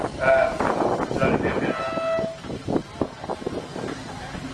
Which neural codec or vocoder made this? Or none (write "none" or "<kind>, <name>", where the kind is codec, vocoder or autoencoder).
none